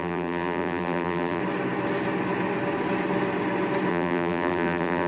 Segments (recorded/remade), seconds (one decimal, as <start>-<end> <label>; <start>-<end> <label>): 0.0-1.4 remade; 1.4-3.9 recorded; 3.9-5.1 remade